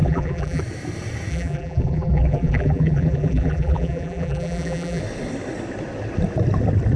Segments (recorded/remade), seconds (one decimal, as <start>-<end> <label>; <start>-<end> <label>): 0.0-0.6 remade; 0.6-1.3 recorded; 1.3-5.0 remade; 5.0-7.0 recorded